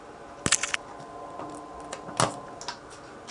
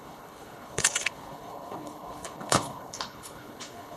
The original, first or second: first